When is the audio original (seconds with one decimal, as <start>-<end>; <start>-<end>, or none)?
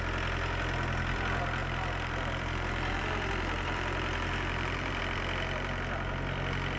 0.0-1.6; 5.0-6.8